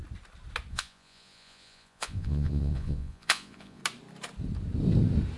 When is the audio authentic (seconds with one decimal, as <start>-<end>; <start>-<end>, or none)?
0.0-0.7; 3.8-5.4